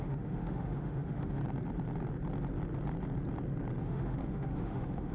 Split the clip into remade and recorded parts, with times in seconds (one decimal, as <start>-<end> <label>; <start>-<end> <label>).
0.0-1.4 remade; 1.4-3.8 recorded; 3.8-5.1 remade